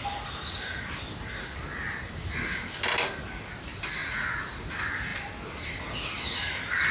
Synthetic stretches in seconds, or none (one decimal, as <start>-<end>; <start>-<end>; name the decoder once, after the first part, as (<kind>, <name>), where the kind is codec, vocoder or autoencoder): 4.0-4.6 (vocoder, Vocos)